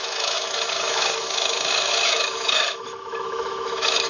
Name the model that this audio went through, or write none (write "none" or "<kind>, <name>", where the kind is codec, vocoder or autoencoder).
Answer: autoencoder, DAC-VAE